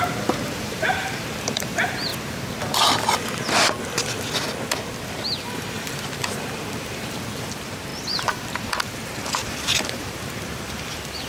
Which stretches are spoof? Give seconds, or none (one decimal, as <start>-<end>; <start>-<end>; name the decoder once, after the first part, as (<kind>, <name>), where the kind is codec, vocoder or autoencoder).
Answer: 0.0-2.1 (vocoder, BigVGAN v2); 5.7-7.9; 8.8-11.3